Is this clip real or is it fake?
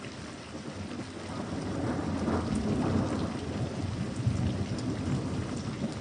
real